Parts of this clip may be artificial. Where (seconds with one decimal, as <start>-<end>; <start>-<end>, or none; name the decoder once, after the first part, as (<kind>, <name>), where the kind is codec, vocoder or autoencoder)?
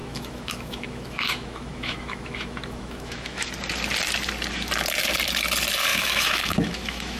0.0-3.5 (autoencoder, DAC-VAE); 5.9-7.2